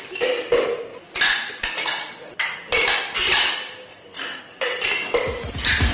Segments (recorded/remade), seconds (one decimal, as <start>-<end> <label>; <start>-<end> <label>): 0.0-5.9 recorded